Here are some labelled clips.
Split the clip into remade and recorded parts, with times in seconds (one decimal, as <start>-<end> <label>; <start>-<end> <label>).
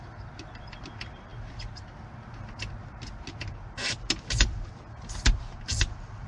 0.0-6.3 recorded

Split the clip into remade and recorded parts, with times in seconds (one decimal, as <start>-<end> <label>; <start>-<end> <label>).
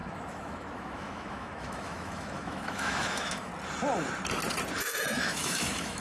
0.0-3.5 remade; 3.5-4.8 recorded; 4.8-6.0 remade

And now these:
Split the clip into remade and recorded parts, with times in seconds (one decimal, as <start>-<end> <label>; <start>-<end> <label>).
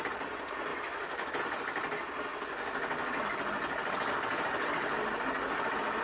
0.0-0.7 remade; 0.7-1.4 recorded; 1.4-2.3 remade; 2.3-6.0 recorded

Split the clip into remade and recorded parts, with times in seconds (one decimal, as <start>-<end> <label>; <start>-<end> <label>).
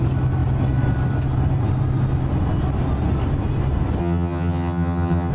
0.0-4.0 recorded; 4.0-5.3 remade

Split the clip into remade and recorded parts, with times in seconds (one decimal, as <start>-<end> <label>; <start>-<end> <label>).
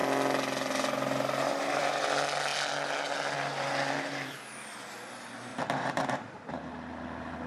0.0-5.5 recorded; 5.5-6.7 remade; 6.7-7.5 recorded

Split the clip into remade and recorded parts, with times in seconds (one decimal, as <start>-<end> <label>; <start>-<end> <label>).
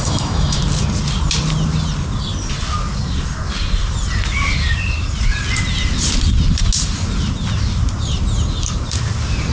0.0-0.6 remade; 0.6-9.5 recorded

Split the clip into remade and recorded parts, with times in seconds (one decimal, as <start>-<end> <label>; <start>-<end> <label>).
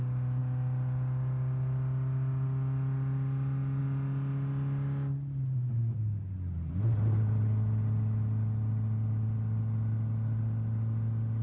0.0-11.4 recorded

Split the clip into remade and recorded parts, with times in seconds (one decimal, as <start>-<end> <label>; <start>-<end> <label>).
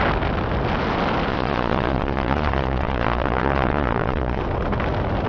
0.0-1.3 recorded; 1.3-4.4 remade; 4.4-5.3 recorded